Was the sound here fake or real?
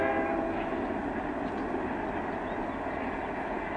real